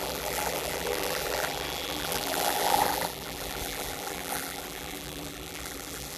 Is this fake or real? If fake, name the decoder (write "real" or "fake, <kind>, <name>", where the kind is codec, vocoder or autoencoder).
fake, vocoder, BigVGAN v2